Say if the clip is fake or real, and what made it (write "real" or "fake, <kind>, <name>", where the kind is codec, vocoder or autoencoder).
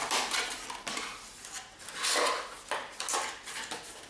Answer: real